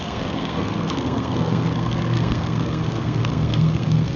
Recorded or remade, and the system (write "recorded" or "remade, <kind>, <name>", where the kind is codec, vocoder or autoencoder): remade, codec, SNAC